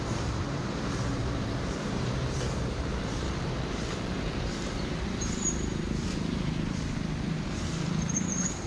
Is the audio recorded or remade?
remade